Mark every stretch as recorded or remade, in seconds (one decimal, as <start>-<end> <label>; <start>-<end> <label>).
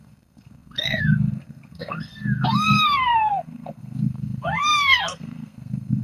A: 0.0-6.0 remade